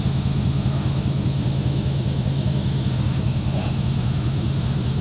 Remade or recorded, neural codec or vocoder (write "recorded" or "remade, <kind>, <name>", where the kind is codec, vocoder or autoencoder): remade, autoencoder, DAC-VAE